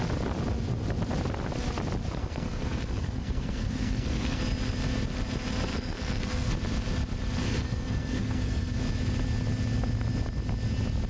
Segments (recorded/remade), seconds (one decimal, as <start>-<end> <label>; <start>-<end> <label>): 0.0-2.2 recorded; 2.2-4.4 remade; 4.4-5.7 recorded; 5.7-6.5 remade; 6.5-7.4 recorded; 7.4-8.8 remade; 8.8-11.1 recorded

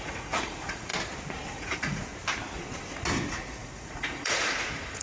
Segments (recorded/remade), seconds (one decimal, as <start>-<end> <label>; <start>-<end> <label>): 0.0-0.9 remade; 0.9-1.5 recorded; 1.5-2.1 remade; 2.1-3.2 recorded; 3.2-5.0 remade

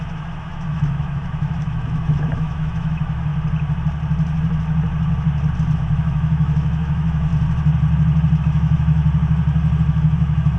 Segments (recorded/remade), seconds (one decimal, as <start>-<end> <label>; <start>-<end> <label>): 0.0-3.3 remade; 3.3-5.8 recorded; 5.8-7.3 remade; 7.3-8.4 recorded; 8.4-9.0 remade; 9.0-9.9 recorded; 9.9-10.6 remade

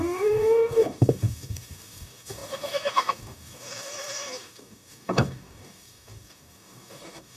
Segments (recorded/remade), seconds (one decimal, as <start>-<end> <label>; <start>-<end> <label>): 0.0-7.4 remade

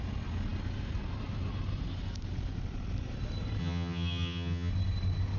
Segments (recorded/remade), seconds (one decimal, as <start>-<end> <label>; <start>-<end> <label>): 0.0-3.6 recorded; 3.6-4.7 remade; 4.7-5.4 recorded

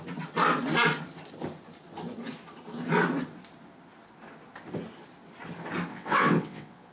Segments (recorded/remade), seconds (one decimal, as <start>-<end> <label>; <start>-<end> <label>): 0.0-5.9 recorded; 5.9-6.9 remade